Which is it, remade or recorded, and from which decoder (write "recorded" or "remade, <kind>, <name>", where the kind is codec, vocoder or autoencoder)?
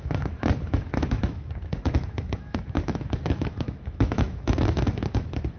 remade, autoencoder, DAC-VAE